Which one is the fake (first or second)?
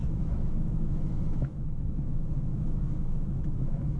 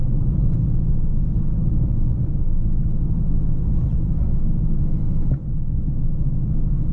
first